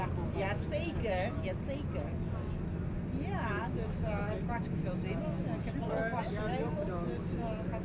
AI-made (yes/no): no